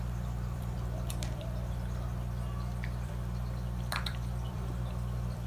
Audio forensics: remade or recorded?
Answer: remade